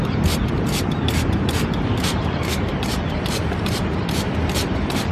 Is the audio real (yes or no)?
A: no